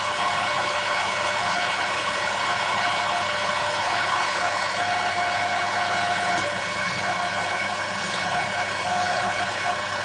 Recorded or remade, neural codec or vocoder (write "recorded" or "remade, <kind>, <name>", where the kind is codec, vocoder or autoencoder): remade, codec, HILCodec